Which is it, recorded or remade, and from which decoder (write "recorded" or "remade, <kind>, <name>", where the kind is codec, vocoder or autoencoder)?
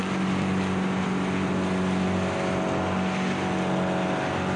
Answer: recorded